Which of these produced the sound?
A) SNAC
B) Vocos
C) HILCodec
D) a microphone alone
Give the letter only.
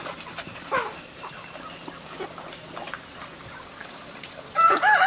D